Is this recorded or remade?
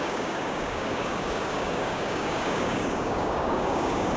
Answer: remade